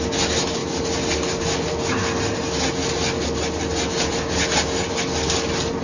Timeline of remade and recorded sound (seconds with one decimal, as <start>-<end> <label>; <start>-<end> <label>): 0.0-5.8 recorded